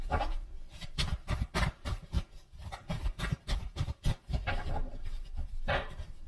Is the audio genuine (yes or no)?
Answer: no